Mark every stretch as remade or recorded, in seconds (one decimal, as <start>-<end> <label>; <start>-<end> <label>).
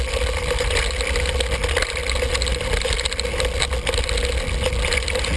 0.0-5.4 recorded